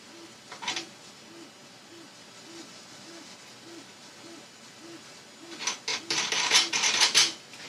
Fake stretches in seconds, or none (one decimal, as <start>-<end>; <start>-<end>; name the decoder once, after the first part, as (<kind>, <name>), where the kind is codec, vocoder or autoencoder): none